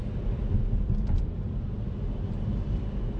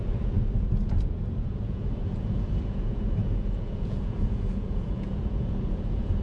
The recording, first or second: first